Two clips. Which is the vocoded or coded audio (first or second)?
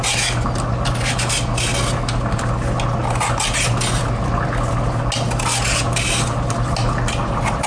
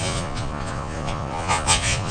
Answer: second